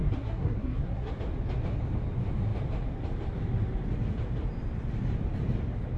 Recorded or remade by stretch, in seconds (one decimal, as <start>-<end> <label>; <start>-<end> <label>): 0.0-1.1 remade; 1.1-6.0 recorded